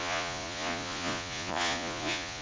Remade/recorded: remade